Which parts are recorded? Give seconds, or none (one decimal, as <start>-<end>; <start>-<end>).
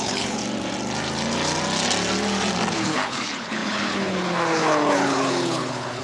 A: 0.4-2.7